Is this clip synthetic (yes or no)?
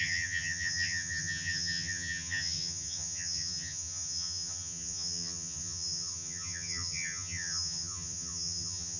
yes